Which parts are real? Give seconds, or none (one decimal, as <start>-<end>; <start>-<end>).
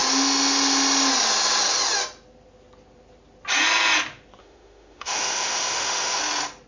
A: 0.0-4.4; 6.2-6.7